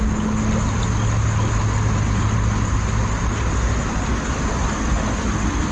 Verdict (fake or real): real